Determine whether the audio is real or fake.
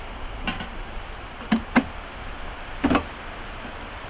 fake